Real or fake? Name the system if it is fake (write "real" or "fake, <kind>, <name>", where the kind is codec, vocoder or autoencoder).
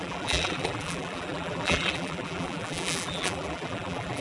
fake, vocoder, BigVGAN v2